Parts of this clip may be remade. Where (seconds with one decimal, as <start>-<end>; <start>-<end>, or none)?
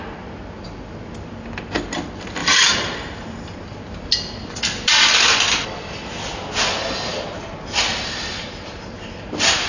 2.4-4.6; 7.1-9.7